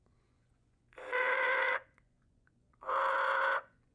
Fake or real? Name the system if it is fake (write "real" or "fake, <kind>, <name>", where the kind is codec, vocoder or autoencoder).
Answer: fake, vocoder, Vocos